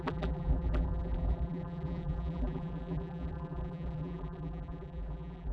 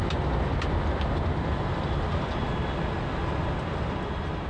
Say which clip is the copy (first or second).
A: first